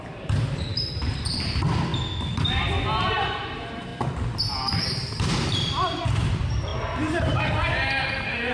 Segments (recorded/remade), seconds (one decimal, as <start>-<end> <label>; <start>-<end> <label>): 0.0-1.9 remade; 1.9-3.1 recorded; 3.1-3.9 remade; 3.9-4.8 recorded; 4.8-6.7 remade; 6.7-7.3 recorded; 7.3-8.5 remade